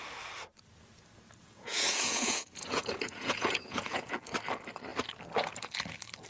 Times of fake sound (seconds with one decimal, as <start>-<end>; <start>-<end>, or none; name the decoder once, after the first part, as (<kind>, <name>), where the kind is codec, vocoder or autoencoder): 1.4-4.1 (vocoder, Vocos)